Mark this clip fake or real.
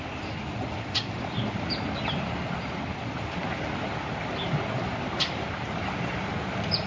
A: fake